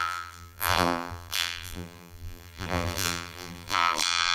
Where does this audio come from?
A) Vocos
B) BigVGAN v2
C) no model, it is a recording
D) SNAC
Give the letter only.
B